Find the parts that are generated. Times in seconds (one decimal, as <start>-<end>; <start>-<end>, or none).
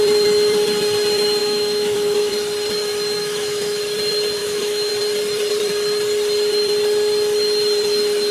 1.4-2.3; 3.2-3.8; 4.4-4.9